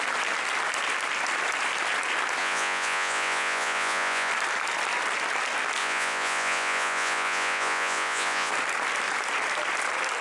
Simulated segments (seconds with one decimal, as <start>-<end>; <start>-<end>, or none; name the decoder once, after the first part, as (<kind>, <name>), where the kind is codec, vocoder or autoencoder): 2.4-4.3 (vocoder, Vocos); 5.8-8.5